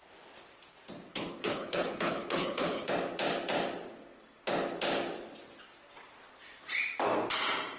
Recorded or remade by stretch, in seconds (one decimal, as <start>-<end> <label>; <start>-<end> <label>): 0.0-1.1 recorded; 1.1-2.9 remade; 2.9-7.8 recorded